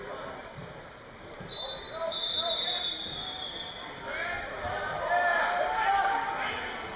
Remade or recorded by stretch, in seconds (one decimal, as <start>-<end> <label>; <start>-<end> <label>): 0.0-2.7 remade; 2.7-4.4 recorded; 4.4-5.3 remade; 5.3-7.0 recorded